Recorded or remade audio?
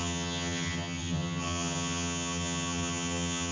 remade